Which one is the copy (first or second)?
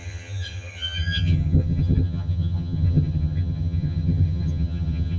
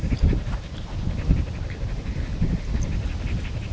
first